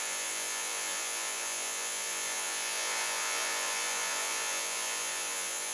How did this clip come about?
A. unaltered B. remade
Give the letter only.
B